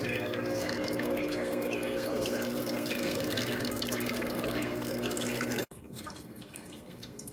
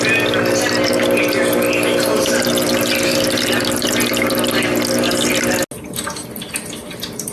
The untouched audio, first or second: second